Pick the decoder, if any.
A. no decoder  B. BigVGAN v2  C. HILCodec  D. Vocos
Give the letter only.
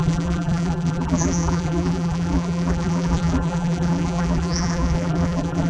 B